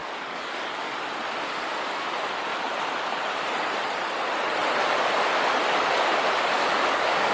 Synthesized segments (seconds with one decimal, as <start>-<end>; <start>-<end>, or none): 0.0-1.0; 6.6-7.3